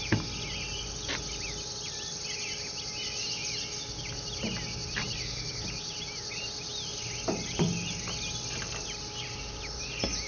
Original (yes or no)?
yes